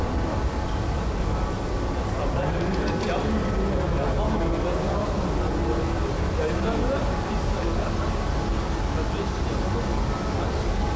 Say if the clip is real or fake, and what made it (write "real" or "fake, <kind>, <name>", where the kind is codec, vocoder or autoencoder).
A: real